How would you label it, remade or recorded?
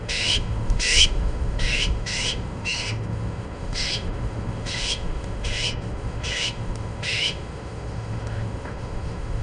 remade